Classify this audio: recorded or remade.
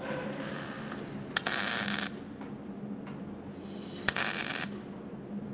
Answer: recorded